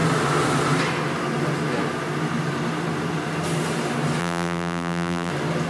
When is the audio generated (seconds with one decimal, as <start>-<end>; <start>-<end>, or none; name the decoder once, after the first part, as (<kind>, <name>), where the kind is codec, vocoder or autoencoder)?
4.2-5.3 (vocoder, BigVGAN v2)

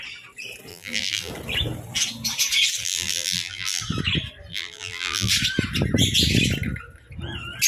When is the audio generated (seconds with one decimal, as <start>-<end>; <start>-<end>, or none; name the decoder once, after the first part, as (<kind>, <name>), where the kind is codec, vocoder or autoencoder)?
0.7-1.3 (vocoder, BigVGAN v2); 2.8-3.8; 4.5-5.3

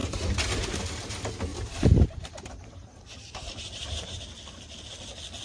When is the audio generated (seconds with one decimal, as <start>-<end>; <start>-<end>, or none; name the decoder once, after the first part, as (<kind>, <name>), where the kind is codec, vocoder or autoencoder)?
1.5-4.2 (vocoder, BigVGAN v2)